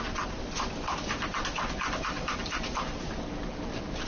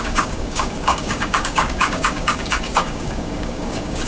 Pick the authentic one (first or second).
first